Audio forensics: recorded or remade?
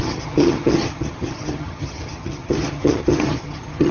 remade